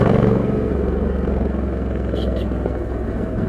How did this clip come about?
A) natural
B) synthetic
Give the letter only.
B